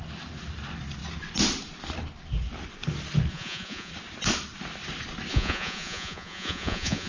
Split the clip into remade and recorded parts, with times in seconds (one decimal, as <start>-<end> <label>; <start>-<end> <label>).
0.0-3.3 recorded; 3.3-3.9 remade; 3.9-5.3 recorded; 5.3-7.1 remade